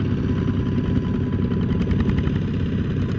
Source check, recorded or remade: recorded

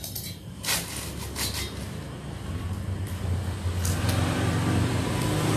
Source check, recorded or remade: recorded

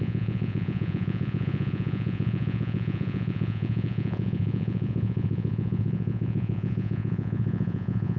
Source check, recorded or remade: remade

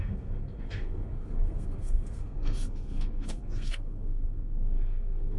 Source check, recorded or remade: remade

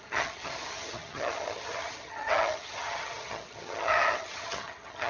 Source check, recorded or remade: remade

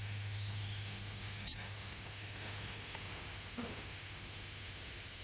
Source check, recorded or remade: remade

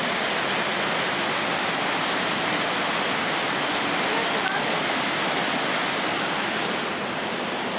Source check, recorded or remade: recorded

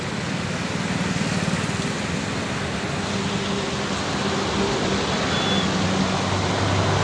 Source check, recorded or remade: recorded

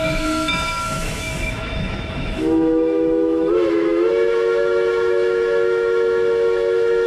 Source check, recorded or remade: remade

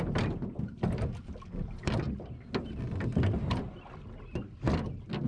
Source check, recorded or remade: recorded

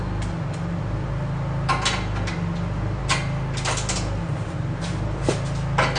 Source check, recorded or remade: recorded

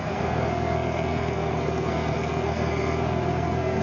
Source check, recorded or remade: remade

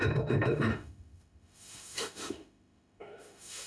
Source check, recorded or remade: remade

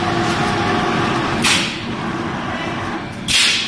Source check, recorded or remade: recorded